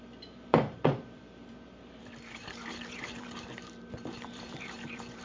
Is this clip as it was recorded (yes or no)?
no